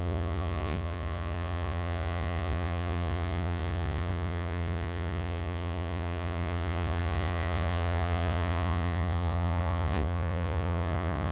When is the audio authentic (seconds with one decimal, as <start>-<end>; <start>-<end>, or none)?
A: none